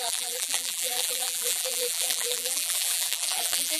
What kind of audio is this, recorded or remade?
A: remade